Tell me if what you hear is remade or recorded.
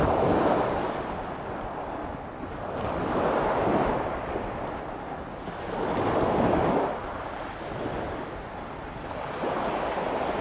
recorded